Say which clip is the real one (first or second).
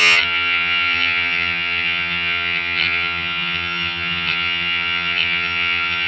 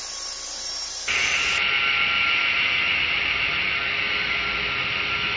second